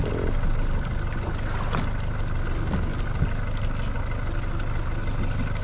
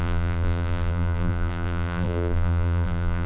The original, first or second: first